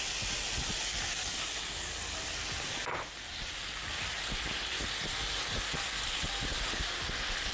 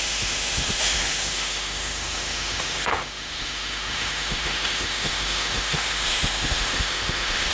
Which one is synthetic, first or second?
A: second